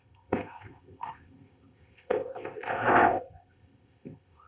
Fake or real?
fake